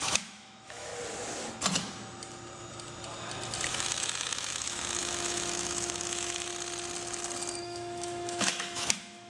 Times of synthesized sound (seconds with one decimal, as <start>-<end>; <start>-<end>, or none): 0.0-0.9; 3.7-6.5; 7.6-9.3